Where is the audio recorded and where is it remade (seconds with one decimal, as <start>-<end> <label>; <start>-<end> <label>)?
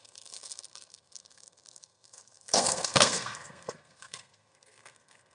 0.0-5.3 remade